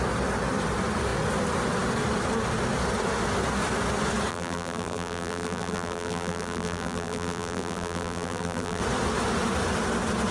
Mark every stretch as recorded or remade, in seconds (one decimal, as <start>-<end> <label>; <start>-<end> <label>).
0.0-4.3 recorded; 4.3-8.8 remade; 8.8-10.3 recorded